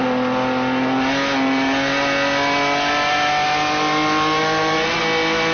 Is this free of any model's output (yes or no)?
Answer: yes